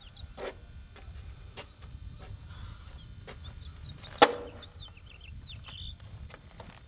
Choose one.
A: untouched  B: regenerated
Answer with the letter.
A